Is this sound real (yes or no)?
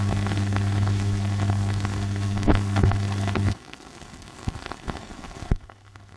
no